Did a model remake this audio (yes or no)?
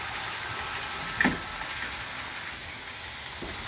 no